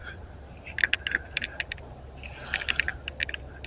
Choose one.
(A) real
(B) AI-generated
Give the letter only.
A